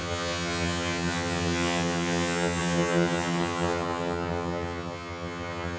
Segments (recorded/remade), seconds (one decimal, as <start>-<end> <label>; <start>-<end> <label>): 0.0-5.8 remade